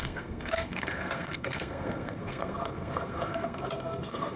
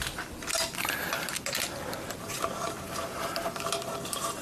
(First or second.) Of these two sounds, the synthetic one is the first